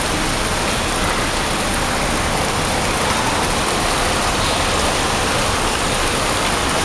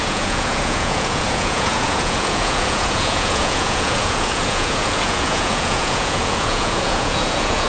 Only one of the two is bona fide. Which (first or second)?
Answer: first